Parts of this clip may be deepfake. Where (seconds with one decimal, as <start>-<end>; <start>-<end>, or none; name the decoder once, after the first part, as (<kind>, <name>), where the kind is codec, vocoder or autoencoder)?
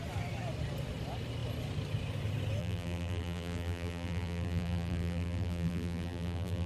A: 2.6-6.7 (vocoder, BigVGAN v2)